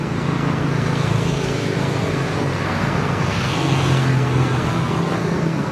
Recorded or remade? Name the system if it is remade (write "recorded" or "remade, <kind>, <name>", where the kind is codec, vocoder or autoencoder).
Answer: remade, codec, SNAC